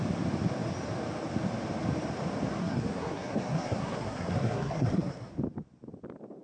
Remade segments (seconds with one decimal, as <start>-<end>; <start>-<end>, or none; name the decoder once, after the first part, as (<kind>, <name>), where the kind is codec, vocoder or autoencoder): 2.6-5.3 (codec, SNAC)